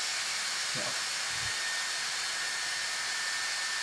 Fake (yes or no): no